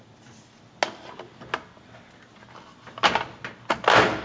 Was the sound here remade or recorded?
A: recorded